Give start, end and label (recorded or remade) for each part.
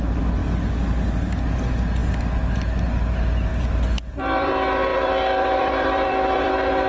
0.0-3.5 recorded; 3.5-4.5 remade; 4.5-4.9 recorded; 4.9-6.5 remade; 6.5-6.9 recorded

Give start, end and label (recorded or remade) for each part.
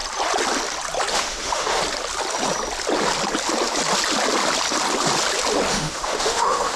0.0-1.1 recorded; 1.1-1.8 remade; 1.8-5.7 recorded; 5.7-6.8 remade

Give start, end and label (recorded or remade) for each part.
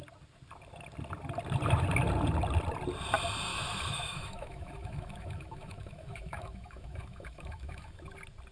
0.0-3.5 recorded; 3.5-8.0 remade; 8.0-8.5 recorded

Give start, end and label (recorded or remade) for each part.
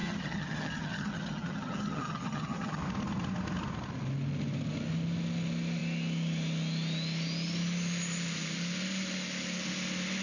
0.0-2.8 remade; 2.8-10.2 recorded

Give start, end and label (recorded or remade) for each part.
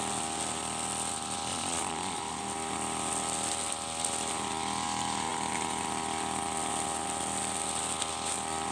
0.0-1.5 recorded; 1.5-2.2 remade; 2.2-8.7 recorded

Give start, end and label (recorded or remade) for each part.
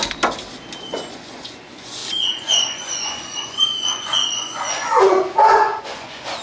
0.0-0.8 recorded; 0.8-6.4 remade